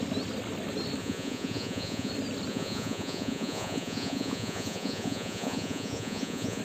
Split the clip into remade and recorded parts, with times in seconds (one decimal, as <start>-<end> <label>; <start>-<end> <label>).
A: 0.0-1.0 recorded; 1.0-2.1 remade; 2.1-2.5 recorded; 2.5-6.6 remade